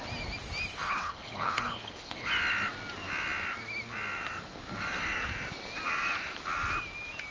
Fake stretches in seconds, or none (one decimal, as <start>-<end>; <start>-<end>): 0.7-2.3